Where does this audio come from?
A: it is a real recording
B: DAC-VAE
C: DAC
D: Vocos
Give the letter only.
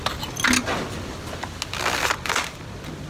A